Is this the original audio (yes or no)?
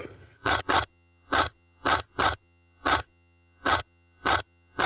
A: no